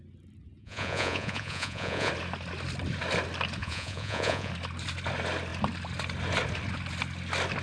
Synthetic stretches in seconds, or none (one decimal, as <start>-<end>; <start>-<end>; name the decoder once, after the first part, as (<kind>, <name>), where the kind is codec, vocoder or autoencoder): 0.6-2.1 (vocoder, Vocos); 3.6-4.5